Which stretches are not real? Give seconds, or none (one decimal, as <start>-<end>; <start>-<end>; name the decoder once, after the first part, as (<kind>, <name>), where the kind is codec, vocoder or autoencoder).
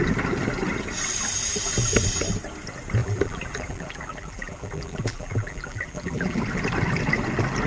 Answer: 3.0-6.4 (vocoder, BigVGAN v2)